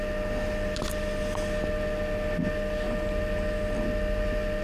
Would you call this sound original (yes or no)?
yes